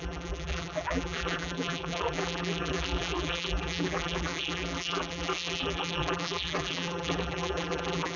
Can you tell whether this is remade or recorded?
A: remade